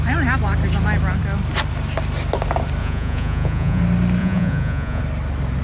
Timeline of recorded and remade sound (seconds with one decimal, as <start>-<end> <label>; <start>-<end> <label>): 0.0-2.8 recorded; 2.8-3.8 remade; 3.8-4.2 recorded; 4.2-5.0 remade; 5.0-5.6 recorded